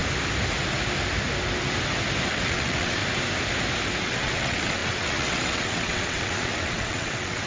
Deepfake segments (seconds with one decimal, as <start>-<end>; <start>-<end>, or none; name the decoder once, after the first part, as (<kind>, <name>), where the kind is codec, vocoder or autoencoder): 2.3-3.0 (vocoder, WaveNeXt); 4.0-7.5

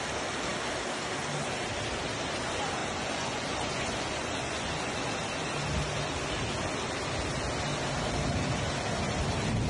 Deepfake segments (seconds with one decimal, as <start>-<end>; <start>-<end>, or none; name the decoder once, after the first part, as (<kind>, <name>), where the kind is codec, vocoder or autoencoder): 2.8-5.0 (vocoder, Vocos)

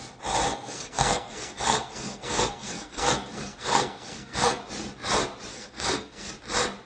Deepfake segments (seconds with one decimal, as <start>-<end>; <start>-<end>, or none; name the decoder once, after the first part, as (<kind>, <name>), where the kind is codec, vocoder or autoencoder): 0.5-4.6 (codec, SNAC); 5.5-6.3

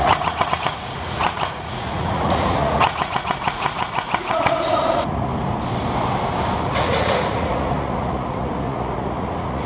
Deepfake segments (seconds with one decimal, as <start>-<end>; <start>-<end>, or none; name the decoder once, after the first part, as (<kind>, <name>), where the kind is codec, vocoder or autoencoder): 0.0-5.3 (vocoder, Vocos); 6.6-9.7